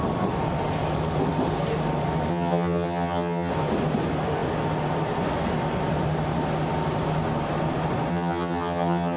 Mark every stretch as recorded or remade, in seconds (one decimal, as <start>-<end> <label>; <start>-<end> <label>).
0.0-2.3 recorded; 2.3-3.5 remade; 3.5-8.1 recorded; 8.1-9.2 remade